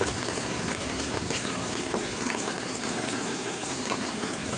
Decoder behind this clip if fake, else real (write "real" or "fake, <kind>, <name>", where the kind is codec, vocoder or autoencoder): fake, codec, SNAC